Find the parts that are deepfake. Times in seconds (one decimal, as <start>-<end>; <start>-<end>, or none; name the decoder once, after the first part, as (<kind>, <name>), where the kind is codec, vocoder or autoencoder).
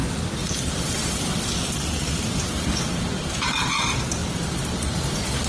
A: 0.4-3.7 (vocoder, BigVGAN v2); 4.2-5.5